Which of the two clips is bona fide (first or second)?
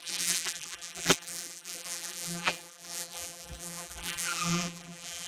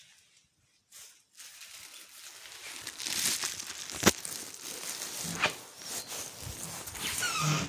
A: second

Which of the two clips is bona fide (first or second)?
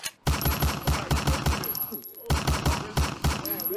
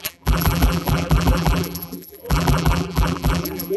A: first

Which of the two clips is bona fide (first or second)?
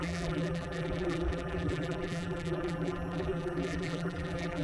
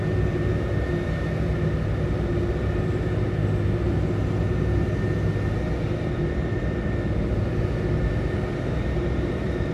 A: second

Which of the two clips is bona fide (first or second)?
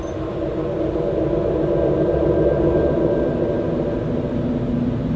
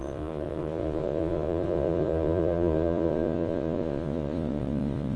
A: first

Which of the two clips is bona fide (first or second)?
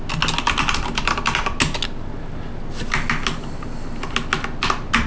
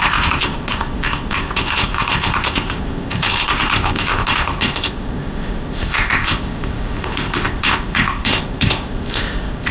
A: first